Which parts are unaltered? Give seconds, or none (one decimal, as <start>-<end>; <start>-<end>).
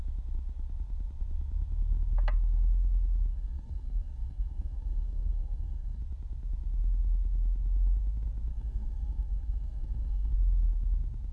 0.0-3.3; 6.0-8.5; 10.3-11.3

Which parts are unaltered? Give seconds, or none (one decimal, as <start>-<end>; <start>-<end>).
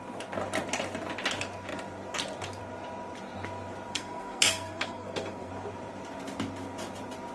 0.0-3.9; 5.5-7.3